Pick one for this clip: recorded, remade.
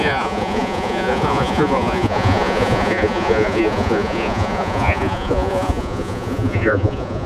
remade